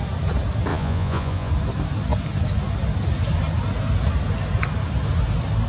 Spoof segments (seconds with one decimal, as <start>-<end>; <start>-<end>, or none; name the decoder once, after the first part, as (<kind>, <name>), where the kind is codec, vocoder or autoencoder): 0.7-1.5 (vocoder, Vocos)